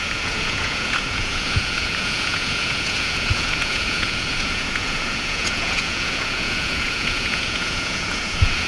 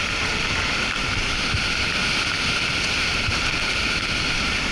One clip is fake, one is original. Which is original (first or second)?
second